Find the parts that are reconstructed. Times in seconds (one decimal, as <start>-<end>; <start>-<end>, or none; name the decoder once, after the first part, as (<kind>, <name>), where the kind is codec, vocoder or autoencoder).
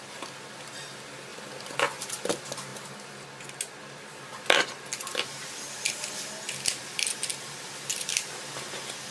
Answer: none